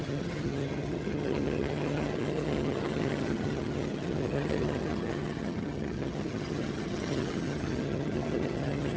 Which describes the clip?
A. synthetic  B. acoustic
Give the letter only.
A